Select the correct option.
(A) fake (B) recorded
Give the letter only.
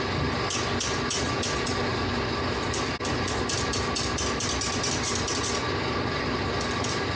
B